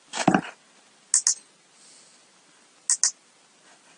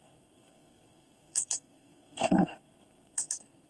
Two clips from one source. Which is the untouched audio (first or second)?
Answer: first